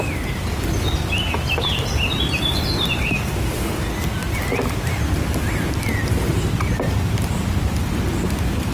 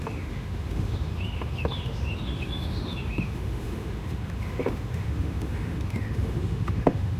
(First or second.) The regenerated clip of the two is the second